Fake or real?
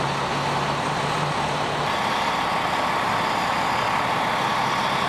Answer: real